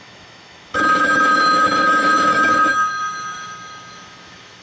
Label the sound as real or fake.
fake